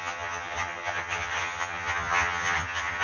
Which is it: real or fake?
fake